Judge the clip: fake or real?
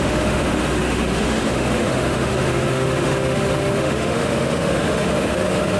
fake